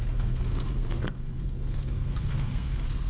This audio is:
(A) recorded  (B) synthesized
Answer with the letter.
B